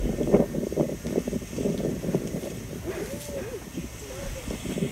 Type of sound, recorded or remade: recorded